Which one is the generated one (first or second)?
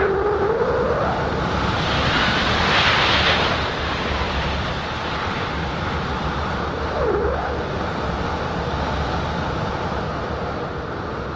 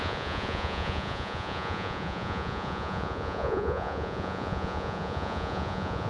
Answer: second